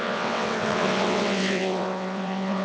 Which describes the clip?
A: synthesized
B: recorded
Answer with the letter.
A